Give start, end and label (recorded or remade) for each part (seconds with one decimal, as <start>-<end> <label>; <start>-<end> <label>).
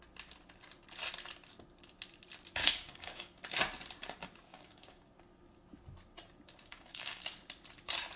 0.0-2.6 recorded; 2.6-3.4 remade; 3.4-4.5 recorded; 4.5-5.1 remade; 5.1-6.7 recorded; 6.7-7.3 remade; 7.3-8.2 recorded